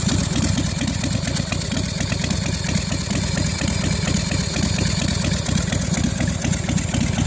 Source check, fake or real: real